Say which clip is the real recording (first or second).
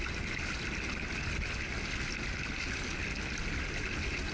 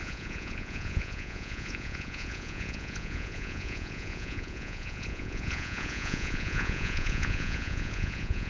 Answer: first